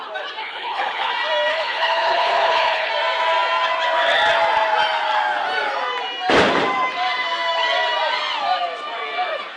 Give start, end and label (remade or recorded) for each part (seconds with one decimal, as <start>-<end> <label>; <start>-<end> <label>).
0.0-0.4 recorded; 0.4-1.1 remade; 1.1-1.5 recorded; 1.5-2.9 remade; 2.9-9.6 recorded